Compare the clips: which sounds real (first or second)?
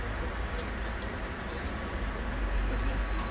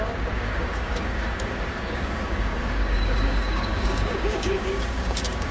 first